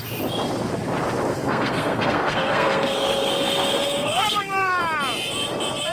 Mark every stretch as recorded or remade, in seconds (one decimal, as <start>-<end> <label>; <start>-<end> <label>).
0.0-1.3 recorded; 1.3-4.8 remade; 4.8-5.9 recorded